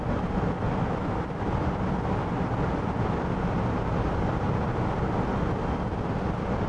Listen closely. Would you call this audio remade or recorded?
recorded